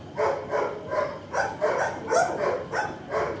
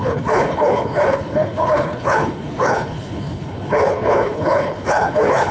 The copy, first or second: second